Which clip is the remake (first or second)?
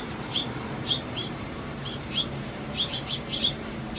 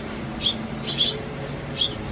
first